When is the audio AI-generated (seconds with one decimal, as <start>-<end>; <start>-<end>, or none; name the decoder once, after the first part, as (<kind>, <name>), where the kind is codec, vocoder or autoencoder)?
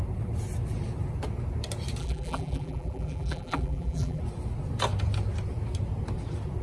2.0-4.2 (vocoder, BigVGAN v2)